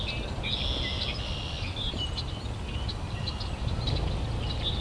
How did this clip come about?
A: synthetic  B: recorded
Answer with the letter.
B